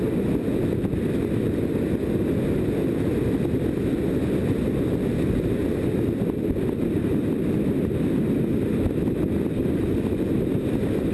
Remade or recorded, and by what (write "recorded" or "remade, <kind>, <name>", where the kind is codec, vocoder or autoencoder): recorded